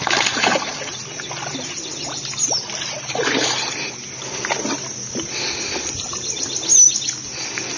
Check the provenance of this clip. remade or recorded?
recorded